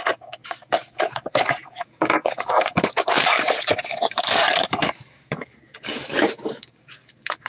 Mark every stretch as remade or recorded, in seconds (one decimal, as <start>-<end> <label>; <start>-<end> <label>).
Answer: 0.0-7.5 remade